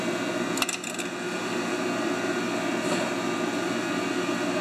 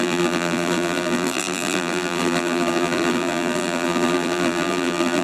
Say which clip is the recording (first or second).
first